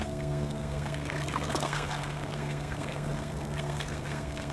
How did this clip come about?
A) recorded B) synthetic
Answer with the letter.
B